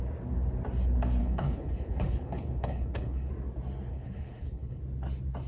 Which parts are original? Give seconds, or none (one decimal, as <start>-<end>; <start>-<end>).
0.0-1.2; 3.3-3.9; 4.8-5.5